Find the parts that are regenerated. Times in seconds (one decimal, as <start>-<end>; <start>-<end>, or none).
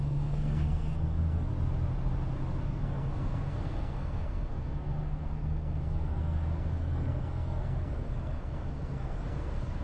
0.0-1.5; 2.6-9.8